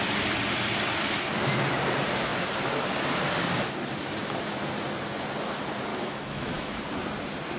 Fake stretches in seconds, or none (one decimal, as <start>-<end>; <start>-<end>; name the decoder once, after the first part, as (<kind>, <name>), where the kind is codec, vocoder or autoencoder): 5.9-6.8 (autoencoder, DAC-VAE)